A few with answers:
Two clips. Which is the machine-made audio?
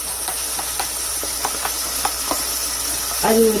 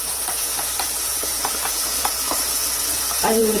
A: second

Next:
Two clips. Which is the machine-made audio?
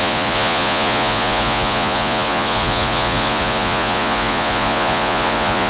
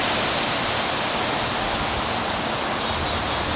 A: first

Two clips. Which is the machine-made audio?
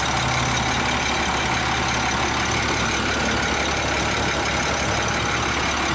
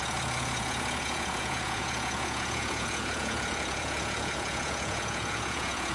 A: second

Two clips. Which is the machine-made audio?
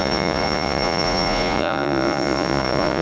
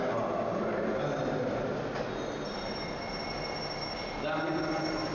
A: first